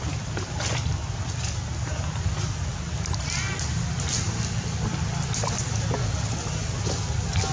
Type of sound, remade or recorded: recorded